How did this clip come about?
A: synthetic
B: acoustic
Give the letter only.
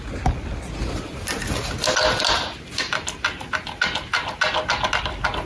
B